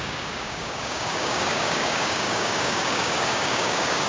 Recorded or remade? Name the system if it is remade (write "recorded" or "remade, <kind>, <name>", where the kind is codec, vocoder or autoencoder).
remade, codec, DAC